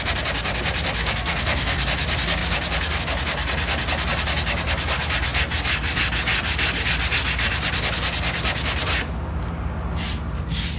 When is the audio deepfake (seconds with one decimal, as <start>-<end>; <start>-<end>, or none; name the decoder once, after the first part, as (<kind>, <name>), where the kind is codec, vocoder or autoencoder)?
1.0-1.8 (codec, SNAC)